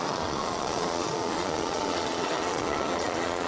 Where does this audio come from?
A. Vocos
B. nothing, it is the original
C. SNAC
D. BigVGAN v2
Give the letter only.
A